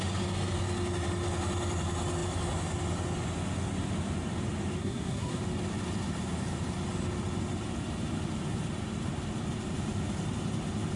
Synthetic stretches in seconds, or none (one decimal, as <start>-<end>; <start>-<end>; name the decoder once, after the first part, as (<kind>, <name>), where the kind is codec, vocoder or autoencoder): 4.8-5.4 (codec, SNAC)